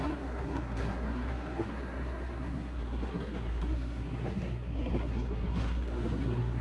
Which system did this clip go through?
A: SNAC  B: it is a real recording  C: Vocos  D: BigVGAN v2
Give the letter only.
A